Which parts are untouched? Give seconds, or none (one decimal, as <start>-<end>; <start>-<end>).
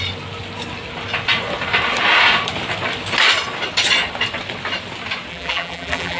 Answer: 0.0-5.3